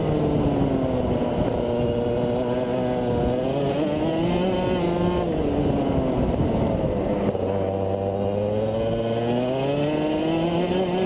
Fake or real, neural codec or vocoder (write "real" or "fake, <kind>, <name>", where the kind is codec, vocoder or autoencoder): real